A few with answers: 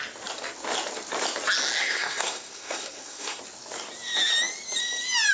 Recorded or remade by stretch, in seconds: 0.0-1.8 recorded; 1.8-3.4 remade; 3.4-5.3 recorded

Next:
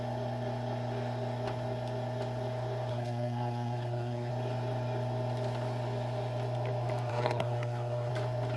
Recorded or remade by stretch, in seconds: 0.0-2.9 recorded; 2.9-4.3 remade; 4.3-7.1 recorded; 7.1-8.1 remade; 8.1-8.6 recorded

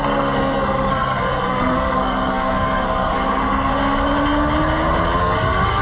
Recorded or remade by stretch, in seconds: 0.0-3.7 remade; 3.7-5.2 recorded; 5.2-5.8 remade

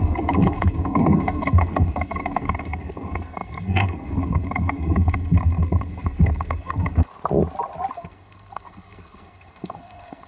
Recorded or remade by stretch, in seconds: 0.0-7.1 remade; 7.1-7.9 recorded; 7.9-10.3 remade